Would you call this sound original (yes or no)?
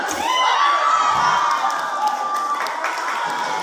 yes